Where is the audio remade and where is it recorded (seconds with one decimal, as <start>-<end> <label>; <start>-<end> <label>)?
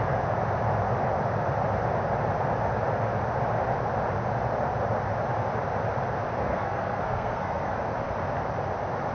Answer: 0.0-6.4 recorded; 6.4-7.7 remade; 7.7-9.1 recorded